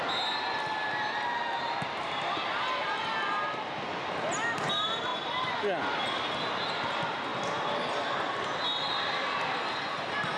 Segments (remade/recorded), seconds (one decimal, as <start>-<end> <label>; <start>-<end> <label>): 0.0-10.4 recorded